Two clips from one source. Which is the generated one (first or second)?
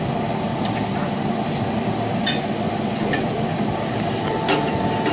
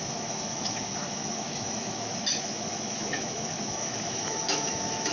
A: second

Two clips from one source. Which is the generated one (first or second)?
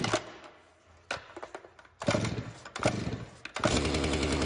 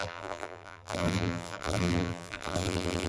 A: second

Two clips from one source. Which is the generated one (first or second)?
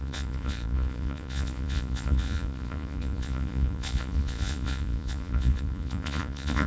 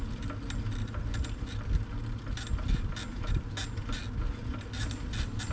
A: first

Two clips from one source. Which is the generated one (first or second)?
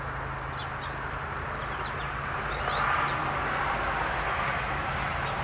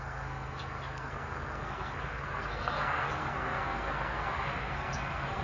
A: second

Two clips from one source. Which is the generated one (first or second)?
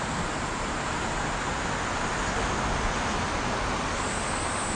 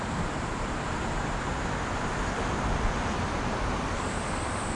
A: second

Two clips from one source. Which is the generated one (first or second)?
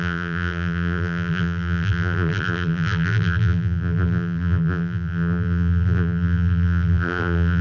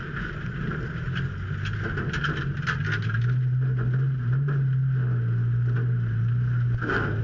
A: first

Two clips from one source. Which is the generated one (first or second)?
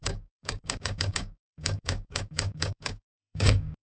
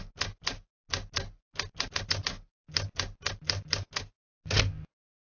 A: first